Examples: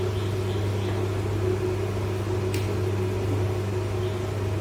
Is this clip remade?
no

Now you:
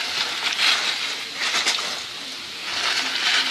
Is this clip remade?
no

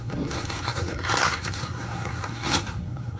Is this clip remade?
yes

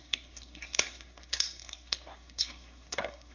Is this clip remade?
yes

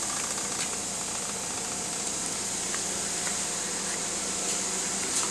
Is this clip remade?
no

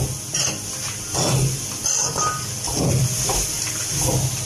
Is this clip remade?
no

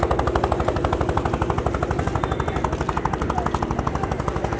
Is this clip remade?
no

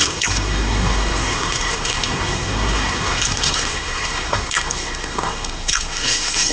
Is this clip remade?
yes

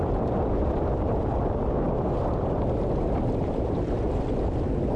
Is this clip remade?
no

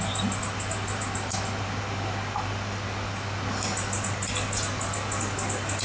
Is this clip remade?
no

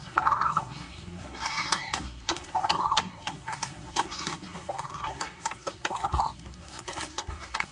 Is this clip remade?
yes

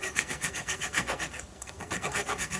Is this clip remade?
yes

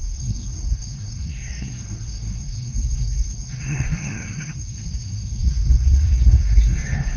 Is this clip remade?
yes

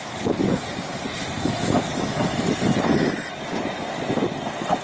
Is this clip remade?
no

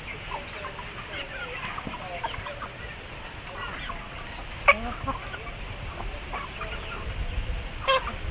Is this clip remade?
no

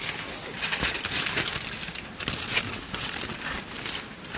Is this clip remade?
no